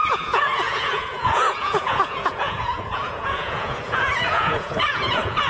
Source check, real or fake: fake